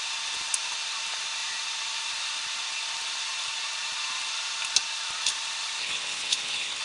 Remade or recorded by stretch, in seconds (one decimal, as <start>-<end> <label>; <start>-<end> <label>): 0.0-5.8 recorded; 5.8-6.8 remade